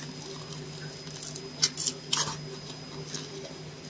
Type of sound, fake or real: real